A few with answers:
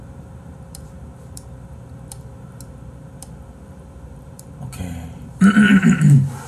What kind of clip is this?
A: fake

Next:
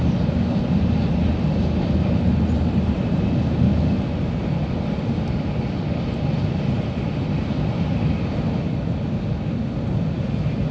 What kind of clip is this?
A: real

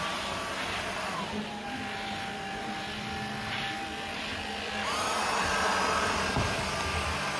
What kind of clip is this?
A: real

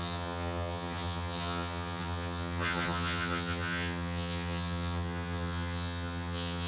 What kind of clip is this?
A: fake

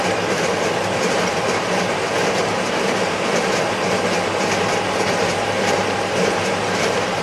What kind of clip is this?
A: fake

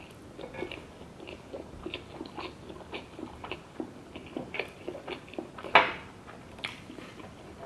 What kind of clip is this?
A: real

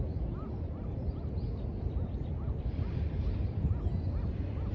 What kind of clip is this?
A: real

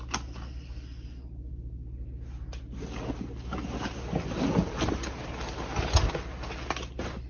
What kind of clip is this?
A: real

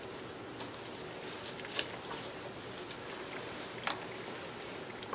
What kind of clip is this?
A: real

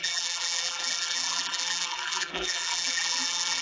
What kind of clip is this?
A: fake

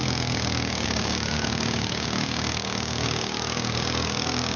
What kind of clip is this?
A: fake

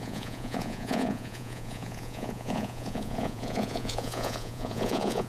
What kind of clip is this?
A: fake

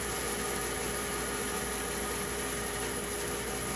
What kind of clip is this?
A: real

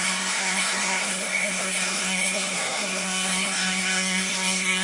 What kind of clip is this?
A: fake